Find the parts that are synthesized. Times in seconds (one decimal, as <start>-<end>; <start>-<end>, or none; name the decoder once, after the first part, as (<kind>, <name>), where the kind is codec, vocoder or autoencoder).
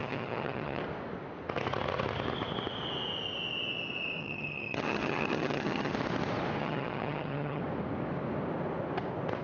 0.0-0.8 (vocoder, HiFi-GAN); 4.2-5.9; 6.6-7.6